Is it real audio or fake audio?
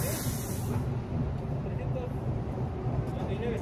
real